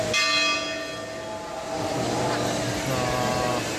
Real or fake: real